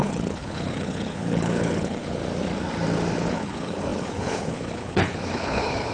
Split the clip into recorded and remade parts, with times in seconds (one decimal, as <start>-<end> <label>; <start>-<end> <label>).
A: 0.0-2.2 remade; 2.2-3.2 recorded; 3.2-5.9 remade